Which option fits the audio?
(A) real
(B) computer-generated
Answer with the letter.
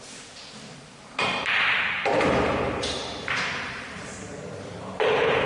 B